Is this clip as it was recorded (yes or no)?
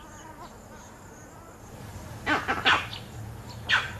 yes